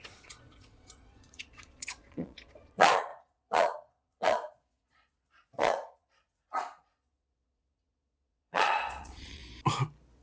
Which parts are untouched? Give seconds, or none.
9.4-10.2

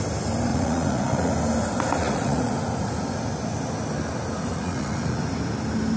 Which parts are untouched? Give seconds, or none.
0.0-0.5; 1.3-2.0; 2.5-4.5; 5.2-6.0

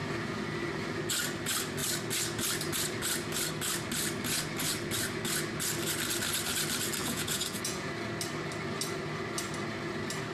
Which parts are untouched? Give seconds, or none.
0.0-7.0; 7.9-10.3

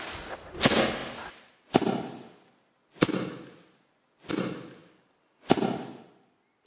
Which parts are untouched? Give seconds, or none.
0.0-6.7

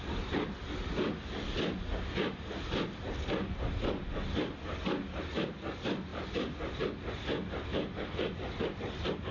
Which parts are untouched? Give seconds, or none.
0.0-9.3